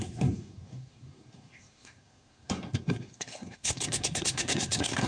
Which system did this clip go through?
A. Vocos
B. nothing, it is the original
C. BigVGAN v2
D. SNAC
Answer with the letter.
D